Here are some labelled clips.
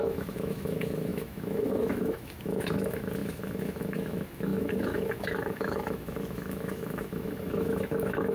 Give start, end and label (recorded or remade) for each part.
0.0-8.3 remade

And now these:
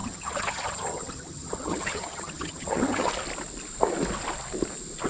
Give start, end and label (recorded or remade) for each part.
0.0-3.1 remade; 3.1-5.1 recorded

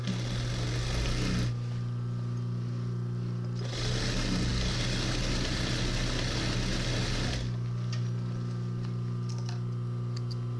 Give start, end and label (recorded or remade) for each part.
0.0-10.6 recorded